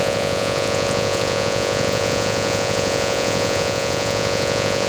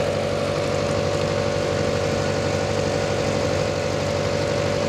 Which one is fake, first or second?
first